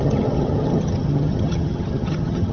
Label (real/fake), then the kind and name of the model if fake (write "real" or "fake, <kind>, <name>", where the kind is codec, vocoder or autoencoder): fake, vocoder, HiFi-GAN